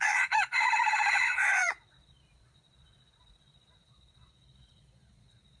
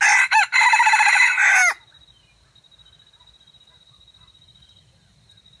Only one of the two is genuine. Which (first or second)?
second